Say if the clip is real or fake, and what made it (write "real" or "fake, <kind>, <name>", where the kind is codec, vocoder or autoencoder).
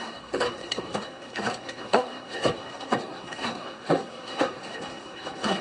fake, codec, SNAC